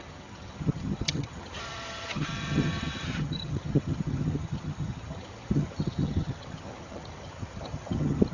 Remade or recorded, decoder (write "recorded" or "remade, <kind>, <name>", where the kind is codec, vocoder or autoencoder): remade, vocoder, HiFi-GAN